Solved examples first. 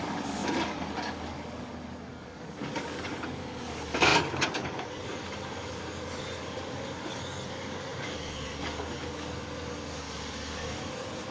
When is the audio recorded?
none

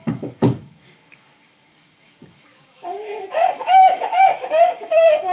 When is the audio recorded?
none

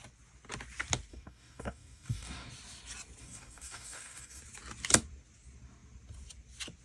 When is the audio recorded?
0.0-1.1; 2.5-3.2; 4.4-6.8